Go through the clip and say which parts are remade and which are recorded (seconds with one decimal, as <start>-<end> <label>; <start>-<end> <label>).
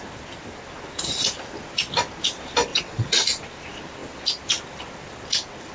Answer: 0.0-2.7 recorded; 2.7-3.2 remade; 3.2-5.7 recorded